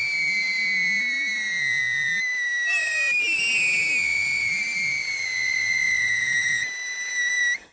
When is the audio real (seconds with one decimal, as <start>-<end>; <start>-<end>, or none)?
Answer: 0.0-7.7